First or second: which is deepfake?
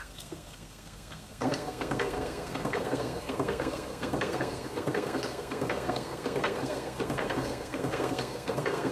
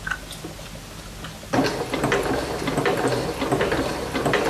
first